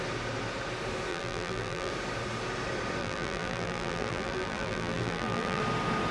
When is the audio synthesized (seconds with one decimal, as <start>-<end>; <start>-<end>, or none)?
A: 1.1-1.9; 3.0-5.6